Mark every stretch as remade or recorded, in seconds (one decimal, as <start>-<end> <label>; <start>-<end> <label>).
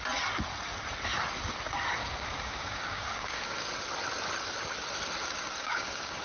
0.0-2.0 recorded; 2.0-3.7 remade; 3.7-5.2 recorded; 5.2-6.2 remade